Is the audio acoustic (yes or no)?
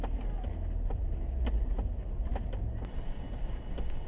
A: yes